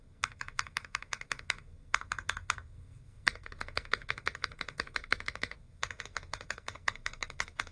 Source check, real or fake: fake